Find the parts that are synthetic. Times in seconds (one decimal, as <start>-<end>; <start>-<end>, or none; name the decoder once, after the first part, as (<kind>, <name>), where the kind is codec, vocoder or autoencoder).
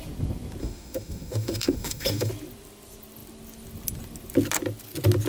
0.6-2.3 (autoencoder, DAC-VAE)